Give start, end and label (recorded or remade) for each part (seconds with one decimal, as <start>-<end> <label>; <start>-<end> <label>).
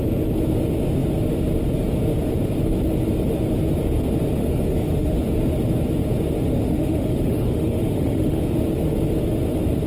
0.0-4.4 recorded; 4.4-5.2 remade; 5.2-6.5 recorded; 6.5-8.4 remade; 8.4-9.9 recorded